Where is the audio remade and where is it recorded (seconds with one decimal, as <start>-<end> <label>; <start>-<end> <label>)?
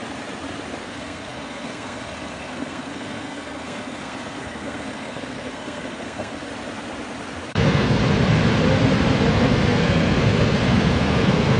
0.0-0.8 recorded; 0.8-6.5 remade; 6.5-7.5 recorded; 7.5-8.0 remade; 8.0-9.3 recorded; 9.3-11.6 remade